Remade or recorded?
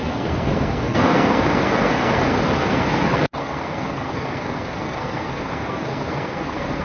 remade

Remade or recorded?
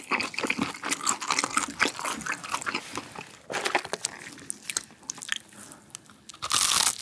recorded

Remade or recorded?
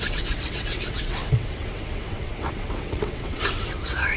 remade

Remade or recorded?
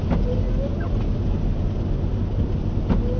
recorded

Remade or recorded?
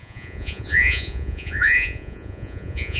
remade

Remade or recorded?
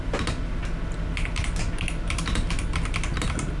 recorded